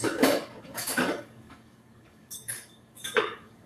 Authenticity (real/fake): fake